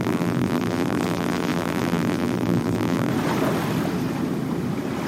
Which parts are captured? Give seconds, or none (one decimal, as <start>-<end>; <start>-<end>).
3.1-5.1

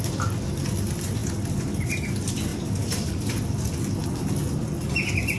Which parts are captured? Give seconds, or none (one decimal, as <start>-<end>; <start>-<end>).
0.0-1.2; 2.0-2.5; 3.4-5.4

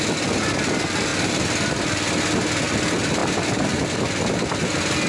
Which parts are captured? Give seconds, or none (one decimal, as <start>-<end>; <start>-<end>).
0.0-5.1

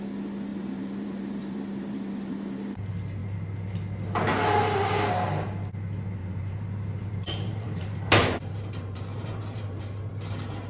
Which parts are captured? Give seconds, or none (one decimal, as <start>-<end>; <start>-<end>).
0.0-0.5; 2.7-6.2; 9.8-10.7

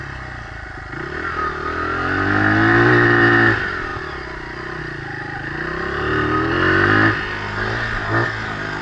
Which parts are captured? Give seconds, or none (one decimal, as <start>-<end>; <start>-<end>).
0.0-8.8

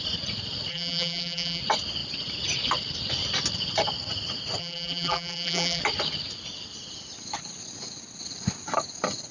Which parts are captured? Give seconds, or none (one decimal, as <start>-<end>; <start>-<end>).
0.0-0.7; 1.6-4.6; 5.8-9.3